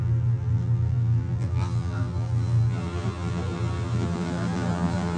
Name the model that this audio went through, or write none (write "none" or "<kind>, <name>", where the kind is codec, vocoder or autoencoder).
vocoder, BigVGAN v2